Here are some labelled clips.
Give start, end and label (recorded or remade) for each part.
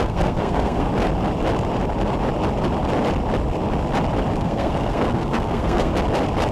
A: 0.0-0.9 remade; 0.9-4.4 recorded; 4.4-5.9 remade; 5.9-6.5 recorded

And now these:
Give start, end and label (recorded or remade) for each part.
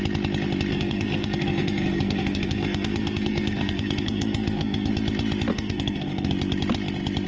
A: 0.0-0.7 recorded; 0.7-4.9 remade; 4.9-5.5 recorded; 5.5-6.3 remade; 6.3-7.3 recorded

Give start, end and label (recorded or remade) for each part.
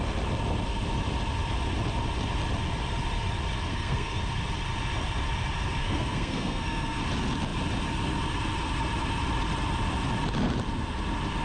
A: 0.0-3.7 recorded; 3.7-4.2 remade; 4.2-5.8 recorded; 5.8-7.0 remade; 7.0-11.4 recorded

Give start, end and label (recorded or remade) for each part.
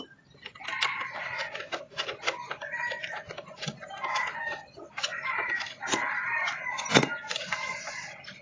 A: 0.0-8.4 recorded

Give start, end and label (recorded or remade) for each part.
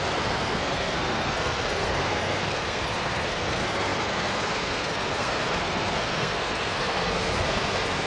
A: 0.0-8.1 remade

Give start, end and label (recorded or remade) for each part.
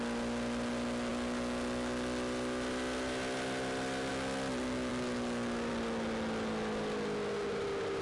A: 0.0-8.0 recorded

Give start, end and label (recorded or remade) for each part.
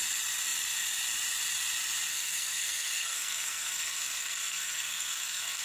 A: 0.0-2.1 recorded; 2.1-5.6 remade